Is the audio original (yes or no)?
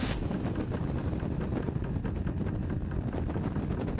yes